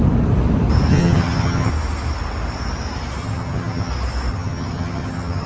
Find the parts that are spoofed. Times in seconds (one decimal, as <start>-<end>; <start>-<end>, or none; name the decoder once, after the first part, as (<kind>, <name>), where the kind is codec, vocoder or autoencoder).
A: 0.9-1.7 (vocoder, HiFi-GAN); 3.2-3.9; 4.3-5.5